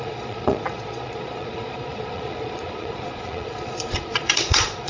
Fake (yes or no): yes